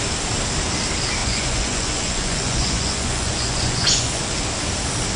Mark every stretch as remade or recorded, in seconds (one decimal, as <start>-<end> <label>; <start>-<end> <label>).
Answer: 0.0-1.2 recorded; 1.2-4.3 remade; 4.3-5.2 recorded